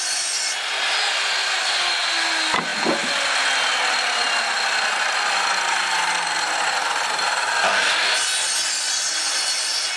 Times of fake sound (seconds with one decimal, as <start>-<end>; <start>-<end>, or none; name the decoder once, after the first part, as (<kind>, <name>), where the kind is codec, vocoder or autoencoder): none